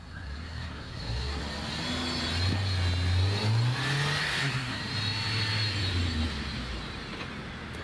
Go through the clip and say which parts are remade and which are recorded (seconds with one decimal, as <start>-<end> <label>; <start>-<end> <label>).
0.0-1.4 remade; 1.4-4.2 recorded; 4.2-4.8 remade; 4.8-7.8 recorded